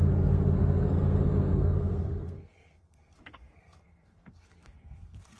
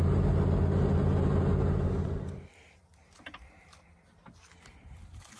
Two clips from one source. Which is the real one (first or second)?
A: second